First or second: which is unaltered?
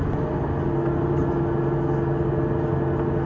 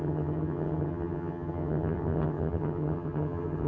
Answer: first